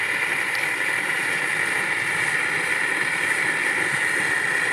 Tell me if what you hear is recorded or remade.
remade